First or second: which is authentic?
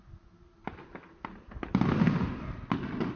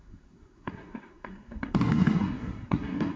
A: first